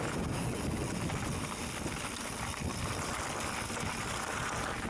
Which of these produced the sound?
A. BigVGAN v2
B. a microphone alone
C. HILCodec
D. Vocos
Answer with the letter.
B